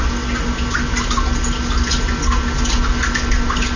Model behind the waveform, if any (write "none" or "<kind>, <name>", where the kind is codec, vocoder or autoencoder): none